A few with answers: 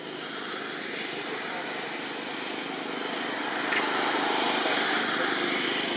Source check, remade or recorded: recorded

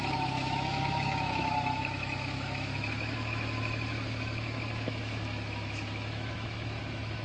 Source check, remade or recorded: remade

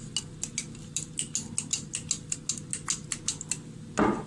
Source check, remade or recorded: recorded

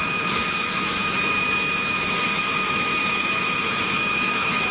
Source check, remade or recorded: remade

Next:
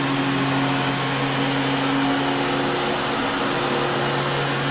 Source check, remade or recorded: recorded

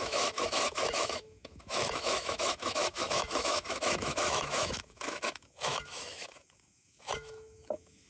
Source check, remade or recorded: remade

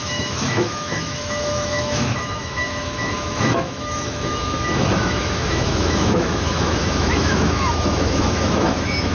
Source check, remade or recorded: remade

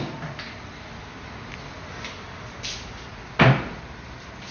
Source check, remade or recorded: recorded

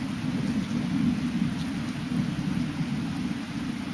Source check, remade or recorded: recorded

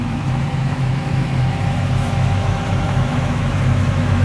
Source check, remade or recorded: remade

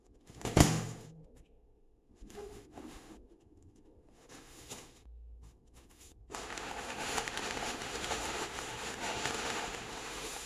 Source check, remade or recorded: remade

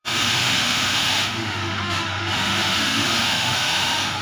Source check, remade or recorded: remade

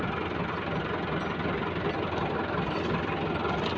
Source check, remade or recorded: recorded